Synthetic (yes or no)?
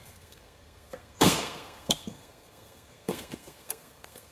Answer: yes